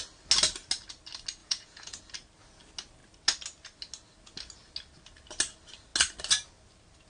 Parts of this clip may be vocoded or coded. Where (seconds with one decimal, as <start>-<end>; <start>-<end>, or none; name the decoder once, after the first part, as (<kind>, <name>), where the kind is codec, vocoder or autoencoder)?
1.4-2.0 (vocoder, Vocos)